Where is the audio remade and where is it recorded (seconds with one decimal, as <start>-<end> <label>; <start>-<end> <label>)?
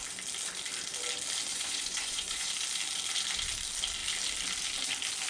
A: 0.0-1.5 recorded; 1.5-2.5 remade; 2.5-5.3 recorded